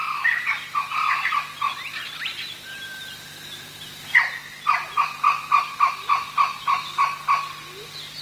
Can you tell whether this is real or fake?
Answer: real